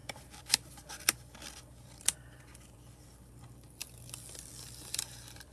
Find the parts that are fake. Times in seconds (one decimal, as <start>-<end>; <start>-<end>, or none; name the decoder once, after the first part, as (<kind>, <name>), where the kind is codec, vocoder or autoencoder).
0.0-3.3 (vocoder, BigVGAN v2)